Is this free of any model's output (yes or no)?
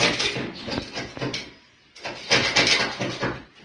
yes